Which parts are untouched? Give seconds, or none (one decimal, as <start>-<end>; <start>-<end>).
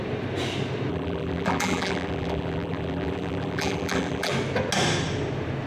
0.0-0.9; 4.3-5.7